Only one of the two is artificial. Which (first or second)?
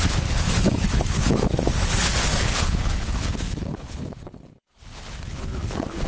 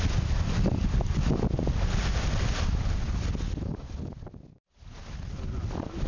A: first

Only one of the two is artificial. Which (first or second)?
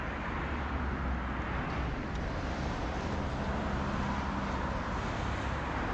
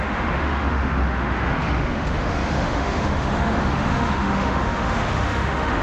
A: second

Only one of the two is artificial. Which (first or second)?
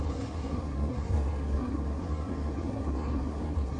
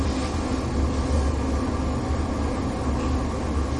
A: first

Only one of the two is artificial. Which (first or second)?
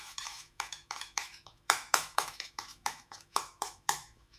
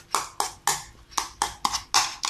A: first